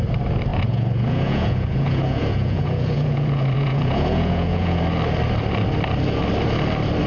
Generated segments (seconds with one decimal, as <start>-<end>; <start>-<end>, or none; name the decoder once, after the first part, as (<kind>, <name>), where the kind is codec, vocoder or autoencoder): 0.5-4.8 (vocoder, Vocos)